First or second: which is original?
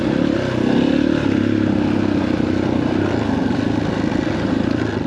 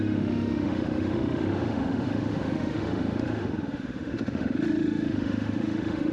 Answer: first